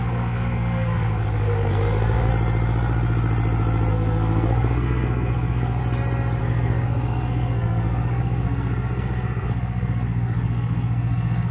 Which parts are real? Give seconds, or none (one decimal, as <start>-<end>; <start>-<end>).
2.3-3.9; 5.8-6.4